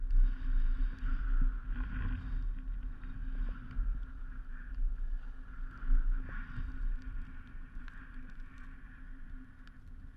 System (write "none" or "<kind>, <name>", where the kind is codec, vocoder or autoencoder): none